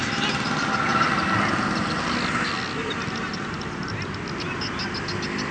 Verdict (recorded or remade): recorded